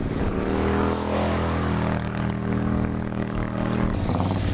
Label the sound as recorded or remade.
remade